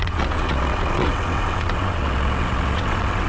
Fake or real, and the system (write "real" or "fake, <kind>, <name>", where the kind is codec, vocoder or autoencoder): fake, vocoder, WaveNeXt